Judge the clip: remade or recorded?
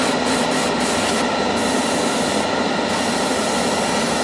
recorded